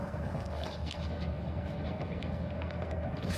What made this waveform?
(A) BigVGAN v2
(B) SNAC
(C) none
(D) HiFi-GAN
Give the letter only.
B